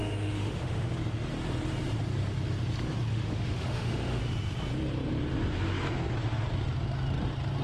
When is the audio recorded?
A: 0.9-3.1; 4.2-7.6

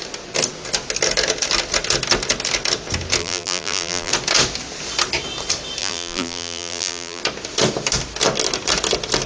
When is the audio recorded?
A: 0.0-3.2; 4.1-5.8; 7.2-9.3

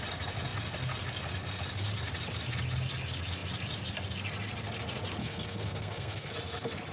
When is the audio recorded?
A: 0.0-5.2; 6.3-6.9

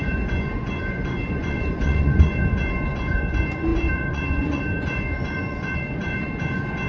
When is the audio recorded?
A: none

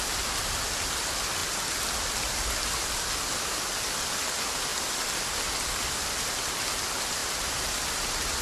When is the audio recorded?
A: 0.0-8.4